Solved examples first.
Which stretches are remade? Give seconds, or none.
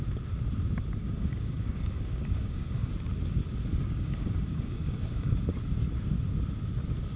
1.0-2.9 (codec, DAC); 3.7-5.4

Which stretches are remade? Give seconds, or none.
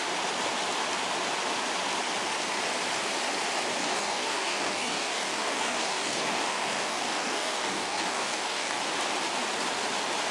3.8-8.8 (codec, DAC)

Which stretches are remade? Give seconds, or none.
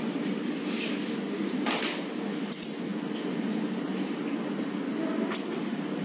none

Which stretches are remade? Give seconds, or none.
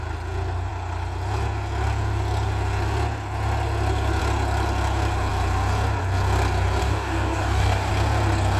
6.8-7.9 (codec, DAC)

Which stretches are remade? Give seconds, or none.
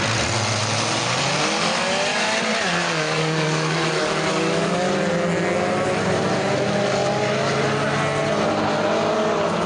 2.8-4.9 (codec, DAC)